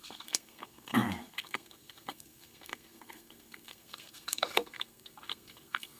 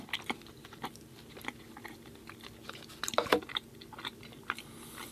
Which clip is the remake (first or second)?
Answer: first